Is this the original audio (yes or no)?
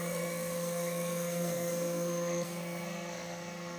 no